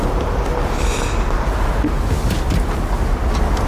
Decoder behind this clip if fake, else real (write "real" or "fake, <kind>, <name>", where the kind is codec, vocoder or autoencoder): real